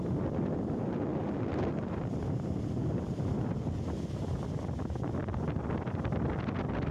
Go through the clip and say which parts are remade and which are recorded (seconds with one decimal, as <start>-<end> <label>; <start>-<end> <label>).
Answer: 0.0-6.9 recorded

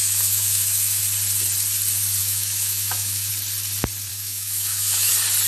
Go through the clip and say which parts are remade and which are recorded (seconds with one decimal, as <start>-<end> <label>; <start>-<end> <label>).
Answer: 0.0-1.0 remade; 1.0-2.2 recorded; 2.2-3.3 remade; 3.3-4.1 recorded; 4.1-5.1 remade; 5.1-5.5 recorded

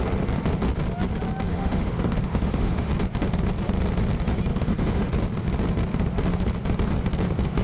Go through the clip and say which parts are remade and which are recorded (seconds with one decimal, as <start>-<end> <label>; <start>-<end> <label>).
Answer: 0.0-1.5 recorded; 1.5-2.9 remade; 2.9-4.5 recorded; 4.5-5.1 remade; 5.1-7.6 recorded

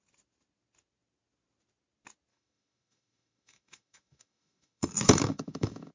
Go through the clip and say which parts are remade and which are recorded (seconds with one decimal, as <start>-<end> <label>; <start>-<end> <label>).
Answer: 0.0-2.3 recorded; 2.3-5.9 remade